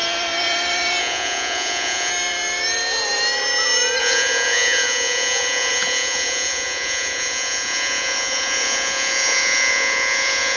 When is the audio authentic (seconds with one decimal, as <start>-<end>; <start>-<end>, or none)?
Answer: 0.0-1.0; 2.1-4.0